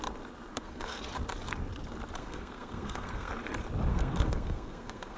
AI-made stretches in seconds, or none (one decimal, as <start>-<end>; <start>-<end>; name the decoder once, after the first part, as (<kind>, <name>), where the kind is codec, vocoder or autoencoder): 0.5-1.0 (codec, SNAC); 2.2-3.3; 3.9-5.2